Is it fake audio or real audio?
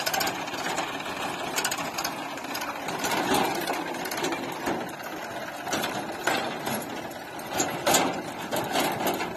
real